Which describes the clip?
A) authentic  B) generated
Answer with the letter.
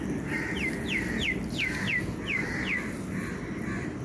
A